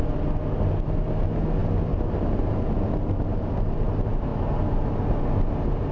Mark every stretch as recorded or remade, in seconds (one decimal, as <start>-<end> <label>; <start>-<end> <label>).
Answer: 0.0-5.9 recorded